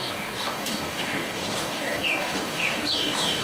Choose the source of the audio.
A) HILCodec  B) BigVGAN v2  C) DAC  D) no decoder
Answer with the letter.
C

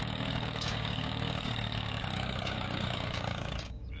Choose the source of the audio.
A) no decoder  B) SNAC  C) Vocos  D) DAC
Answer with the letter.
D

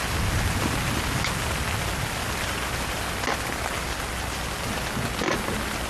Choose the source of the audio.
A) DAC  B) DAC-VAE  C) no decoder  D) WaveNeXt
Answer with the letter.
C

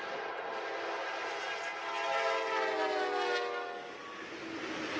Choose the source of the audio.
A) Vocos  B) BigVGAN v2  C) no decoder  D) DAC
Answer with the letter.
C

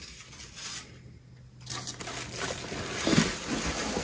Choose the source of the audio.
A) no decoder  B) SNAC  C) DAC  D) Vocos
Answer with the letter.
A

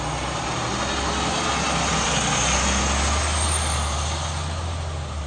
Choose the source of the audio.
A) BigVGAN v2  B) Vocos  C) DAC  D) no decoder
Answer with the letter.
D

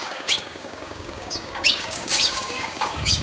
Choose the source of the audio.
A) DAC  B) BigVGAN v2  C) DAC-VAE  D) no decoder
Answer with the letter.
A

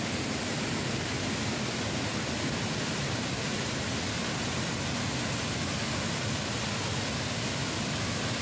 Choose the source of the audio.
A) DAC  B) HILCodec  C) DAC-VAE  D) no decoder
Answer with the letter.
D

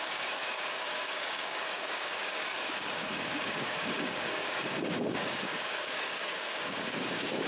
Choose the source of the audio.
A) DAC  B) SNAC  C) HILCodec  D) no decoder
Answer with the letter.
A